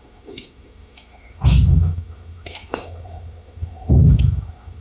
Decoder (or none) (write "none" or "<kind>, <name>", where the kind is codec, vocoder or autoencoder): autoencoder, DAC-VAE